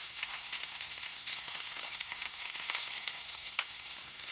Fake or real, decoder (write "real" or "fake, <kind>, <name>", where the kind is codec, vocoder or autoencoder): fake, codec, SNAC